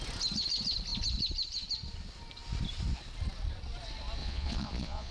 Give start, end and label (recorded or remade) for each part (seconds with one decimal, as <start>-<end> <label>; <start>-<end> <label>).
0.0-4.2 recorded; 4.2-5.1 remade